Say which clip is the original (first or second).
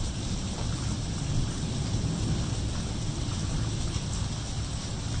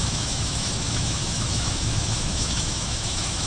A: first